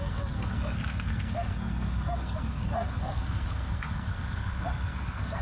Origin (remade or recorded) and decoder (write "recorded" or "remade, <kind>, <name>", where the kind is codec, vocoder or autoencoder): remade, codec, SNAC